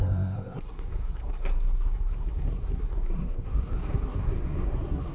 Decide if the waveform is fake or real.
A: fake